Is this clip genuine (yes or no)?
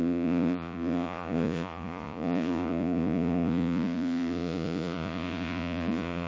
no